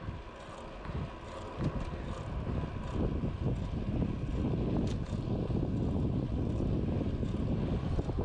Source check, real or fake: real